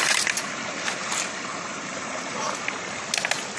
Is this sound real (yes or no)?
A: yes